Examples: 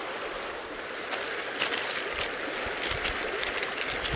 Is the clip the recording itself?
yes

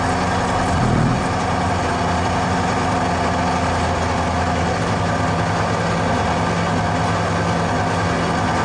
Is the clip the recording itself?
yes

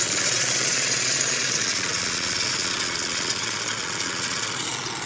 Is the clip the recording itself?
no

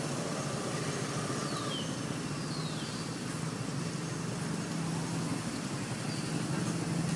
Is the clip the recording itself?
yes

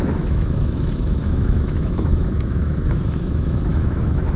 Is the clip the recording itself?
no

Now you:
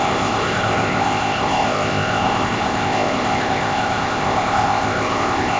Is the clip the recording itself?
no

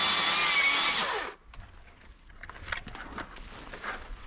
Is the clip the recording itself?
yes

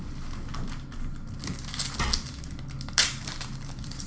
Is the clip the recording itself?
yes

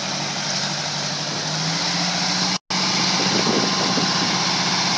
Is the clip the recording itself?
yes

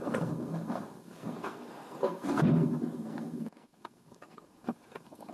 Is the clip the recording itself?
no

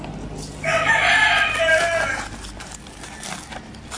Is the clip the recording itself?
yes